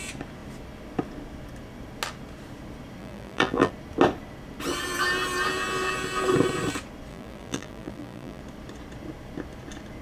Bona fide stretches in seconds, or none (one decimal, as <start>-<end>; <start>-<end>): 0.0-3.0; 3.7-7.1; 8.4-10.0